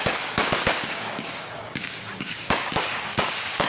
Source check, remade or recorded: remade